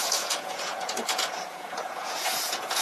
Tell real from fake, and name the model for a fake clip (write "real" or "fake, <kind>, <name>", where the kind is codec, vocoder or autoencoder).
fake, vocoder, Vocos